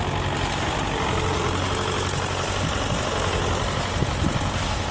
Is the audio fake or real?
real